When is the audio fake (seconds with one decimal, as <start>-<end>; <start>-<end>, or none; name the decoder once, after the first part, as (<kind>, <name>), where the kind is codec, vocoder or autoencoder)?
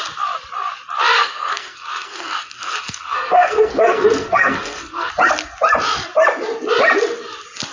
1.2-5.1 (codec, SNAC)